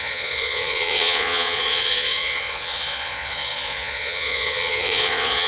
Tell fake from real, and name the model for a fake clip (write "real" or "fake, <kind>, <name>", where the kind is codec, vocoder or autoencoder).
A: fake, vocoder, Vocos